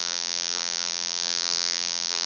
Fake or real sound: fake